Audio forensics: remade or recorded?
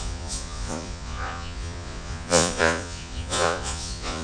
remade